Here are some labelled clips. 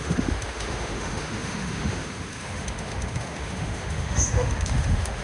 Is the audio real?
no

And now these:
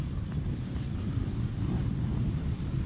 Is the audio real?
no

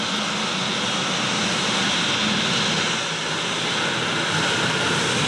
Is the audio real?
yes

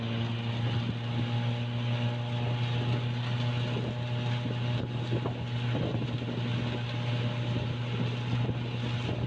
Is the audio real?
yes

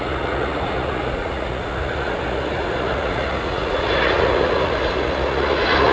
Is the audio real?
no